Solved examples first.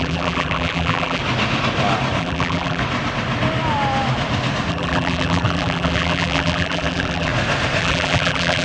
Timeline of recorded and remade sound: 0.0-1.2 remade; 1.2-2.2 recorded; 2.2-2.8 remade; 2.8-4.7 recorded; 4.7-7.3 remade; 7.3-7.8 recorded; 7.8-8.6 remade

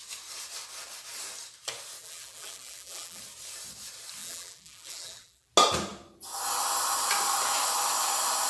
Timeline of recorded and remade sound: 0.0-2.0 recorded; 2.0-3.2 remade; 3.2-4.2 recorded; 4.2-5.5 remade; 5.5-8.5 recorded